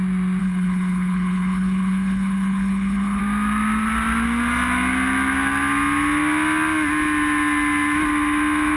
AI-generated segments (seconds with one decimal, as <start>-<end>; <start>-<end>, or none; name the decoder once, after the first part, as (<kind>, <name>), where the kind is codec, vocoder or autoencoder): 0.4-3.2 (codec, HILCodec)